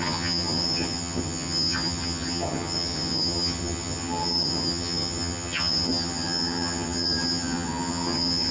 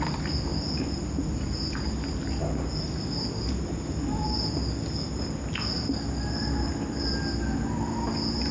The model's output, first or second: first